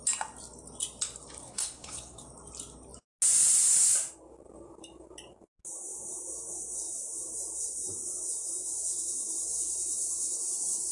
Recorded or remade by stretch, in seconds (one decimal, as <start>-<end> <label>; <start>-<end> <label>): 0.0-1.4 recorded; 1.4-2.2 remade; 2.2-10.9 recorded